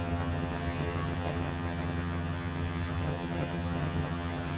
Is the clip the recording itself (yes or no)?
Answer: no